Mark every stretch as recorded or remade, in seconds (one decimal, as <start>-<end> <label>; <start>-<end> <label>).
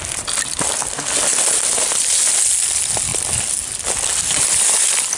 0.0-5.2 recorded